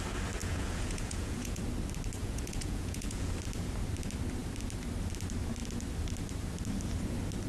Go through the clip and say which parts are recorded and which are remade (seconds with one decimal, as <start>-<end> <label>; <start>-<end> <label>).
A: 0.0-0.4 recorded; 0.4-1.6 remade; 1.6-2.2 recorded; 2.2-3.3 remade; 3.3-7.5 recorded